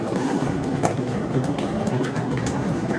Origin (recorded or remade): remade